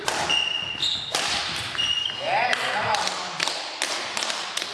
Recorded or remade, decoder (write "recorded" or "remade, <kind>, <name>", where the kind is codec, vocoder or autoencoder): recorded